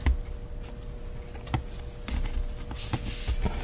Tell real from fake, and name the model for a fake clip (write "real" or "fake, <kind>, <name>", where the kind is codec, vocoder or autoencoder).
real